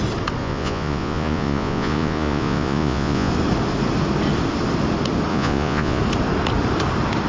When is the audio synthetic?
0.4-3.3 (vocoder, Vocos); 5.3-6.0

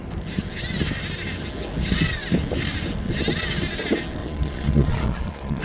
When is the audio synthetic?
4.2-5.6 (vocoder, Vocos)